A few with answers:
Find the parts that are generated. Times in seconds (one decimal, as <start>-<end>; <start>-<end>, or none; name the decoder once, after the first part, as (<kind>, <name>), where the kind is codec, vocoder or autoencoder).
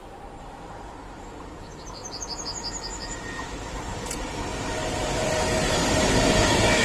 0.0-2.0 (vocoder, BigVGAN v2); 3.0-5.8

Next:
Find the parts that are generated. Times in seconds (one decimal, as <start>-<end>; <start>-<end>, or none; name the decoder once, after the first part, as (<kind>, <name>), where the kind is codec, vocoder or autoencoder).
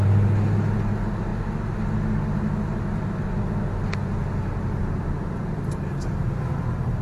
4.8-6.3 (vocoder, BigVGAN v2)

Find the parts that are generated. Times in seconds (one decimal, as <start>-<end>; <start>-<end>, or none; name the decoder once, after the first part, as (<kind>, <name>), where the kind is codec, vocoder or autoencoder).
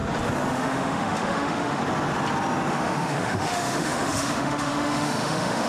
0.5-1.8 (autoencoder, DAC-VAE); 2.7-5.7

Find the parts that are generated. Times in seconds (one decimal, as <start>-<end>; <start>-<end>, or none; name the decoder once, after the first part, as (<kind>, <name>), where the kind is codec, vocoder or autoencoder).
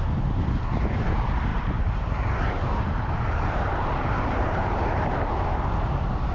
1.5-5.3 (vocoder, BigVGAN v2)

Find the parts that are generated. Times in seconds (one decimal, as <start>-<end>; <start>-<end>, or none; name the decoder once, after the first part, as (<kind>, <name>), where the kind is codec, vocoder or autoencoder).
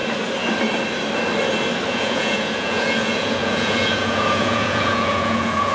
1.9-5.7 (vocoder, Vocos)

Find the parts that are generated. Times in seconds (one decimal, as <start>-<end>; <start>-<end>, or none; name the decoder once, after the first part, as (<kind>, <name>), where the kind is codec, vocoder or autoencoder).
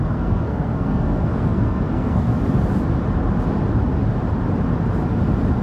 0.0-2.3 (codec, SNAC)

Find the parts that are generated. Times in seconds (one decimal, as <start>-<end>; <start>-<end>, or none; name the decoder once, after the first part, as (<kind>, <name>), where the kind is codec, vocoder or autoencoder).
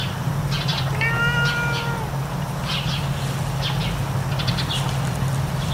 none